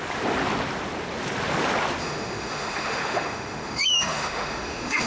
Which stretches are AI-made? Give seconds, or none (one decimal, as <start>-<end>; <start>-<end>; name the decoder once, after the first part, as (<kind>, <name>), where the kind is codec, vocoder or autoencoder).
2.0-5.1 (autoencoder, DAC-VAE)